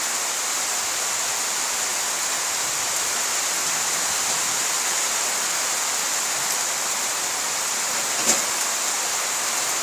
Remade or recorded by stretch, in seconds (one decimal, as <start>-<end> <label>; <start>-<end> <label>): 0.0-9.8 recorded